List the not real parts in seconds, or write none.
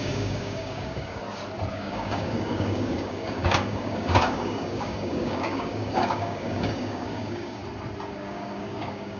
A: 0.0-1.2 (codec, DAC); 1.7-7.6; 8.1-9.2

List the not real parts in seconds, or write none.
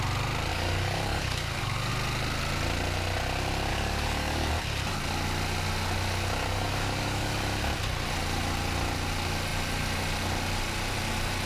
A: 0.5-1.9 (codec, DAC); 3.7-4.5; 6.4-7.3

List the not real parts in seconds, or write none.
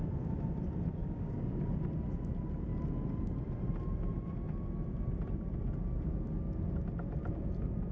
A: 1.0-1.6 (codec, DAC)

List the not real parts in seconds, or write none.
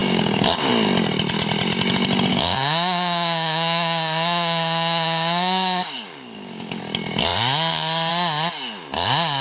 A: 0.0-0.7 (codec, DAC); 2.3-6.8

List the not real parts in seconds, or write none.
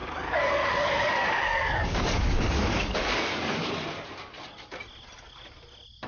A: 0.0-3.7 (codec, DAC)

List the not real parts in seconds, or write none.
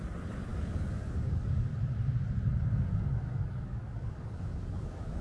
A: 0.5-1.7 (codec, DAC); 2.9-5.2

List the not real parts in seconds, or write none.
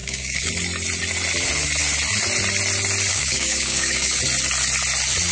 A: 0.0-0.5 (codec, DAC); 3.1-4.2